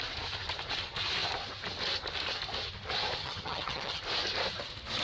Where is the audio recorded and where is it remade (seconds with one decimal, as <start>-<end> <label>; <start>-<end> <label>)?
0.0-3.2 recorded; 3.2-4.0 remade; 4.0-5.0 recorded